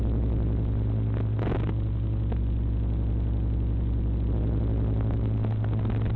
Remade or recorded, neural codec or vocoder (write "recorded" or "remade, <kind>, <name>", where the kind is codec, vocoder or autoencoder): recorded